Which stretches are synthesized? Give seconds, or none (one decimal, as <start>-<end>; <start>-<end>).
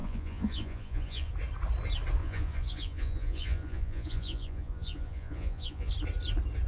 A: 0.0-1.3; 2.2-5.9